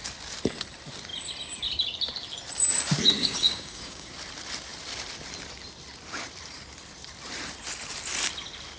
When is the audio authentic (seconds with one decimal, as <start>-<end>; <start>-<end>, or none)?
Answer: 0.0-3.2; 4.1-8.8